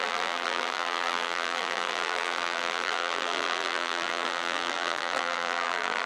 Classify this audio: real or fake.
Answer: fake